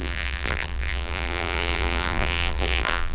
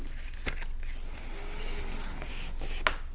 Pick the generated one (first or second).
first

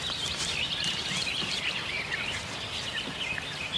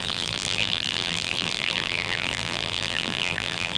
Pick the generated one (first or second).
second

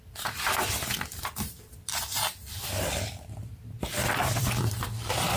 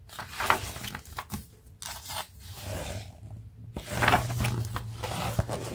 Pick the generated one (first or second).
first